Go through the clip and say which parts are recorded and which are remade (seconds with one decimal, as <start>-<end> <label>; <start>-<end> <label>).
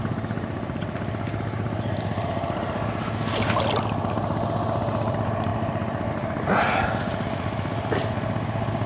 0.0-8.9 recorded